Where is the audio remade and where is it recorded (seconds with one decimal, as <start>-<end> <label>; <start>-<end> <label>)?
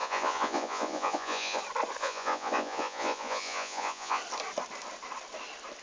0.0-1.6 remade; 1.6-2.0 recorded; 2.0-4.2 remade; 4.2-5.8 recorded